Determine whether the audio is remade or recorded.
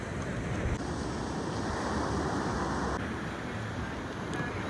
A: recorded